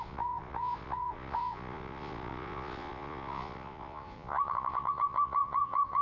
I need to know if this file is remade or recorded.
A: remade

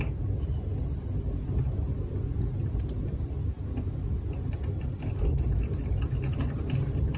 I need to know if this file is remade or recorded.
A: recorded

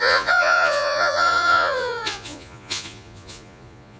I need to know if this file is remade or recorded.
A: remade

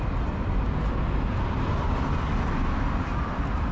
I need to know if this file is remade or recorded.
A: recorded